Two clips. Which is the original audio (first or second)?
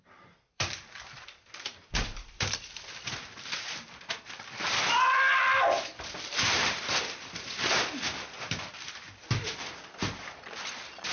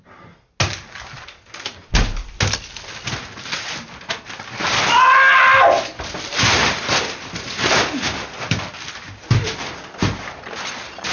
second